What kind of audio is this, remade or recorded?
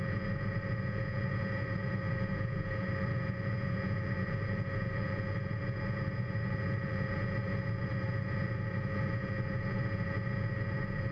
remade